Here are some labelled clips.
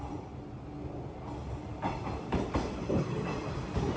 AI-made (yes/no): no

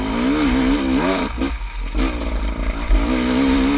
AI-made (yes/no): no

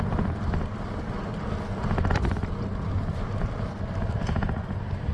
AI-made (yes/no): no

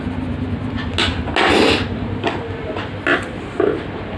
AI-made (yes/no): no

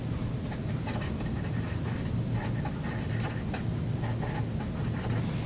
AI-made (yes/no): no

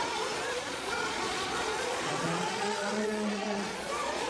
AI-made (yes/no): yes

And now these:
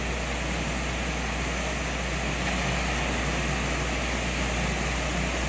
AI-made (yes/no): no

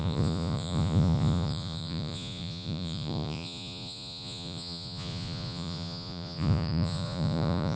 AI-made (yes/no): yes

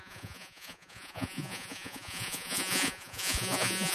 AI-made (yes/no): yes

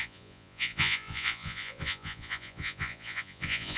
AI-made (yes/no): yes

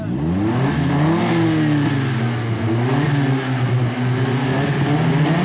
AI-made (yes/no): no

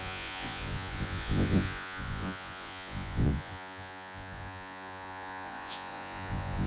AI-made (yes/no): yes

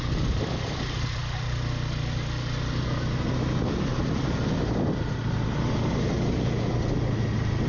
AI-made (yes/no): no